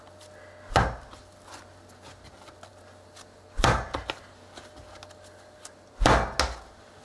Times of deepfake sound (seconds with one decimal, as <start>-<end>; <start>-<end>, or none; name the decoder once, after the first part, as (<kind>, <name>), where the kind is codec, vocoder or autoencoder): none